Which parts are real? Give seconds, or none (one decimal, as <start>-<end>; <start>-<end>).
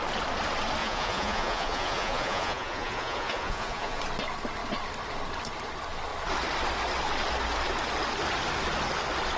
0.0-0.8; 4.0-9.4